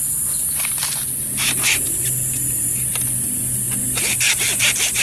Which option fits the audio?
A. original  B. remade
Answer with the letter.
A